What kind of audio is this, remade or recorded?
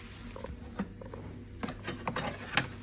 recorded